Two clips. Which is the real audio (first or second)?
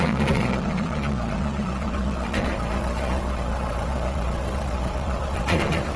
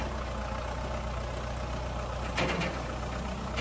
second